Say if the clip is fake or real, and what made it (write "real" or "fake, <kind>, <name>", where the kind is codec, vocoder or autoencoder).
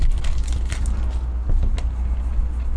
real